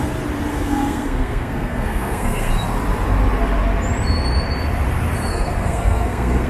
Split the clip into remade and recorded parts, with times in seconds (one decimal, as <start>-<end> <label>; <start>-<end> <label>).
0.0-0.5 recorded; 0.5-2.5 remade; 2.5-5.3 recorded; 5.3-6.5 remade